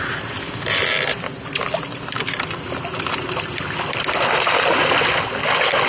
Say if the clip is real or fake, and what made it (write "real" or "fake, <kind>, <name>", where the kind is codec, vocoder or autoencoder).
real